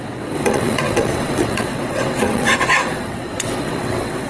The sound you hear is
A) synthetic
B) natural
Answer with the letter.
A